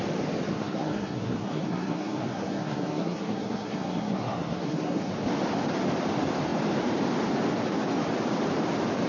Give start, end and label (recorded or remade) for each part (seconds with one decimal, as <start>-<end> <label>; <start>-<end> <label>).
0.0-0.5 recorded; 0.5-5.1 remade; 5.1-9.1 recorded

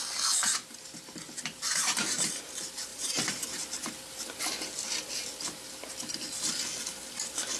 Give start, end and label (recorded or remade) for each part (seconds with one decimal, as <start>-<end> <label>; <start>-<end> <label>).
0.0-7.6 recorded

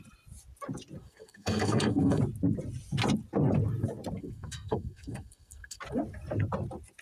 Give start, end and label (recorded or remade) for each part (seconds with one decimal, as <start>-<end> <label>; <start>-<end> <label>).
0.0-1.0 recorded; 1.0-2.2 remade; 2.2-4.2 recorded; 4.2-5.8 remade; 5.8-7.0 recorded

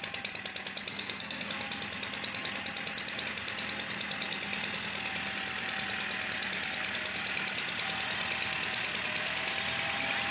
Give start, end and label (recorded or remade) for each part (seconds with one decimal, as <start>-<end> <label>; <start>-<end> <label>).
0.0-0.9 recorded; 0.9-1.5 remade; 1.5-10.3 recorded

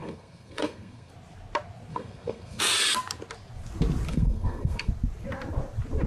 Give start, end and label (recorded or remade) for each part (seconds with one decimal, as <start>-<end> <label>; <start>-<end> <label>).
0.0-1.1 remade; 1.1-1.9 recorded; 1.9-2.6 remade; 2.6-4.1 recorded; 4.1-4.9 remade; 4.9-6.1 recorded